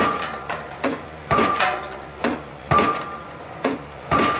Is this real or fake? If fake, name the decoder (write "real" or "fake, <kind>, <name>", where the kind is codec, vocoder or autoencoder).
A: fake, vocoder, Vocos